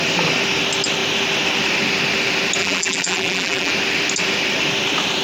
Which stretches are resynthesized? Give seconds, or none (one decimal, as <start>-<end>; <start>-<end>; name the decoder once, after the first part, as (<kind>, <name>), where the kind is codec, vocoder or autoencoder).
2.6-3.7 (vocoder, BigVGAN v2)